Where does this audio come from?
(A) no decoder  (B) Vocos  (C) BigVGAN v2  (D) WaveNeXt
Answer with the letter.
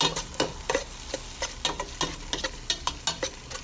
A